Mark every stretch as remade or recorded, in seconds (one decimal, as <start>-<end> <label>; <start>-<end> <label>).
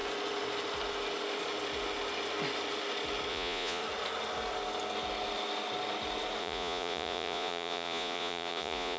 0.0-3.3 recorded; 3.3-3.8 remade; 3.8-6.4 recorded; 6.4-9.0 remade